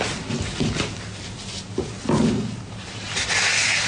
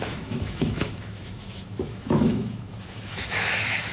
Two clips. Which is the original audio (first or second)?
first